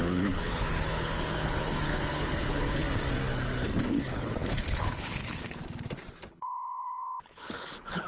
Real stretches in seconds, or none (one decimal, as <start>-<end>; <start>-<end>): 2.8-3.9; 5.4-6.1